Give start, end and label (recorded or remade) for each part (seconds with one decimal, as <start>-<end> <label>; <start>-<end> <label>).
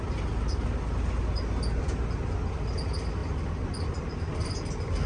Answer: 0.0-5.1 recorded